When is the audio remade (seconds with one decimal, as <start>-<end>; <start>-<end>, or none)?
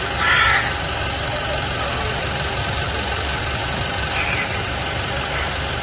2.6-4.6